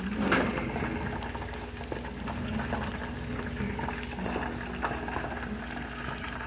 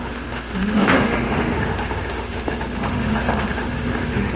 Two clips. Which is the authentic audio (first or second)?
first